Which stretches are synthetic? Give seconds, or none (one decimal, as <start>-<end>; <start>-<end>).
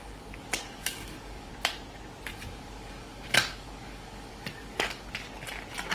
0.0-1.5; 2.3-5.1